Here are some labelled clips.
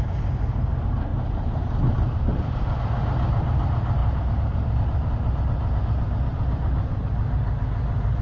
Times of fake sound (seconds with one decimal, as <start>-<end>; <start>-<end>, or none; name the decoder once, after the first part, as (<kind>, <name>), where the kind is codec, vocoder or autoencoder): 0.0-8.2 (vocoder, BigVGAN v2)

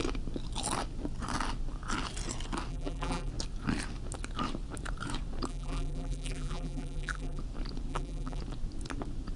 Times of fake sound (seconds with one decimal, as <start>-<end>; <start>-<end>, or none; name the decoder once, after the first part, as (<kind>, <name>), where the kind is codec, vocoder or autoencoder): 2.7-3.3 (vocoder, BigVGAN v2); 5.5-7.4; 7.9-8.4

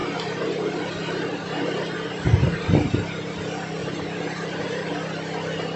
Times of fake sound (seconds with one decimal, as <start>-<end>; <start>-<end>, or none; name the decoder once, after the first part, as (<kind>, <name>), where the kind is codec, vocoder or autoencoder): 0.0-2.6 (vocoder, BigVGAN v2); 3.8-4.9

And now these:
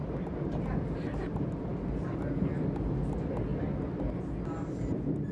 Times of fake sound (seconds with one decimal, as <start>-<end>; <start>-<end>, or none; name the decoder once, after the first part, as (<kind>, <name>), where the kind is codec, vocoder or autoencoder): 0.0-1.6 (vocoder, BigVGAN v2)

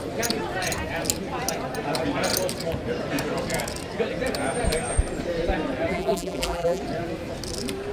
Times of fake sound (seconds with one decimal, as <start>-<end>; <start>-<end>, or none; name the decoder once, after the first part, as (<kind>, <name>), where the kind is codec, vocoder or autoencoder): 5.9-6.8 (vocoder, BigVGAN v2)

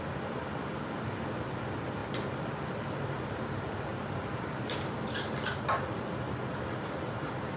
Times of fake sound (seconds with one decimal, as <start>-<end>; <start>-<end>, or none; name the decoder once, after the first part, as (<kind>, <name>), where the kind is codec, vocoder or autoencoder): 3.9-4.6 (vocoder, BigVGAN v2)

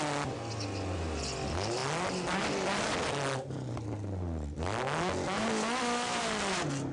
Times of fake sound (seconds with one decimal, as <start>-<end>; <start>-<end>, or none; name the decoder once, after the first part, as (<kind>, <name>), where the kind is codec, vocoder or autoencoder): none

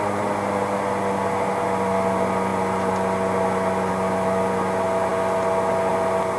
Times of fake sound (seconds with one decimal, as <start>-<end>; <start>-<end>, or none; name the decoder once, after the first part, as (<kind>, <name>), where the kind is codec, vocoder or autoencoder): none